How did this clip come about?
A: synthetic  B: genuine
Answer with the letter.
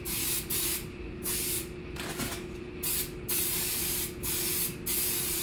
B